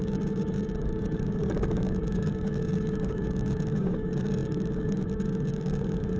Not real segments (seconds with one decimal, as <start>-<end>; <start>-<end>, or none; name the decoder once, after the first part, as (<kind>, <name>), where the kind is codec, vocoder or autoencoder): 0.0-6.2 (codec, DAC)